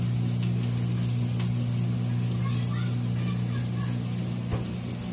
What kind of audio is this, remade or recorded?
recorded